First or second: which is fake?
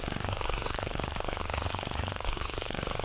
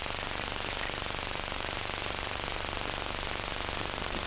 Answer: first